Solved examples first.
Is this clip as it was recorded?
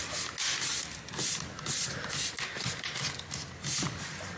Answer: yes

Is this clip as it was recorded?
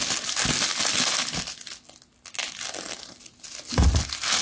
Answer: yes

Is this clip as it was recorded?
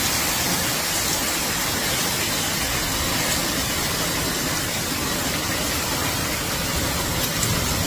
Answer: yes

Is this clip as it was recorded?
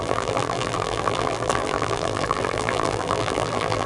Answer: no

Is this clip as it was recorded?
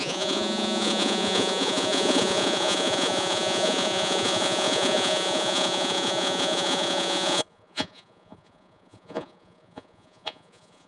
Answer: no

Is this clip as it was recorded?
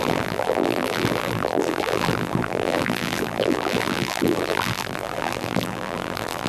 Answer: no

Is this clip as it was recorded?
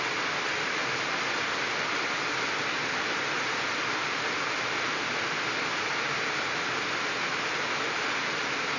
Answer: yes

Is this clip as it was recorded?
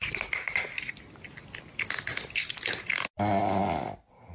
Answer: yes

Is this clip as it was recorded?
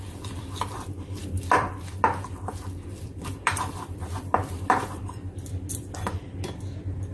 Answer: no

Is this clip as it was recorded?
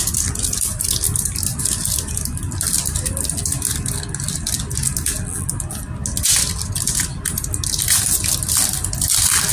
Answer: yes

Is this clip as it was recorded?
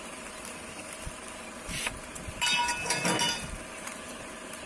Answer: yes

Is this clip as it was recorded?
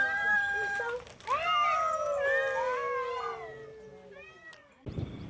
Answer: yes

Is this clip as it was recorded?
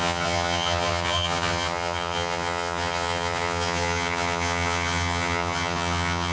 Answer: no